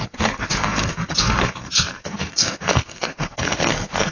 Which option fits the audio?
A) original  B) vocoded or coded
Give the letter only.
B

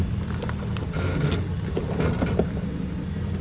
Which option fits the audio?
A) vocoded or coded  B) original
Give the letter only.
B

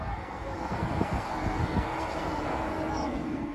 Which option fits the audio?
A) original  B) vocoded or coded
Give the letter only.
B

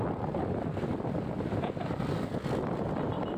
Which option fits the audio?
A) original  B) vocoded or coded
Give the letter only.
A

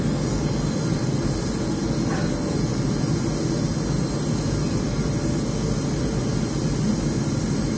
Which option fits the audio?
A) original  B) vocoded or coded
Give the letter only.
A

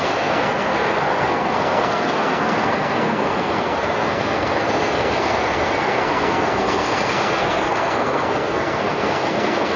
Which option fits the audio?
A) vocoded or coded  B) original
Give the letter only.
A